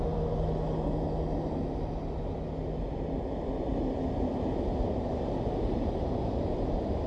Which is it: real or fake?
real